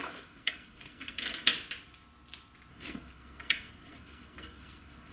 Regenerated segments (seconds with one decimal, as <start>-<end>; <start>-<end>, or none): 0.0-1.5; 2.7-5.1